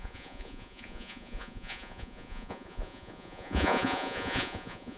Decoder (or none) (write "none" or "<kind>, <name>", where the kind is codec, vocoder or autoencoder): vocoder, Vocos